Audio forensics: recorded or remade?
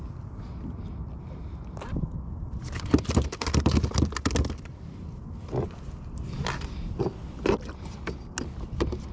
recorded